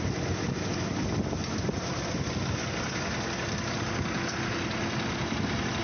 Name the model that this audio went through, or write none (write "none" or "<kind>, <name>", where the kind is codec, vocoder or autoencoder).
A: none